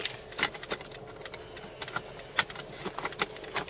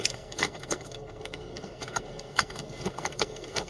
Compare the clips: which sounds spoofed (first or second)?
second